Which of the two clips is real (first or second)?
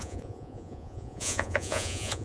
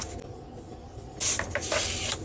second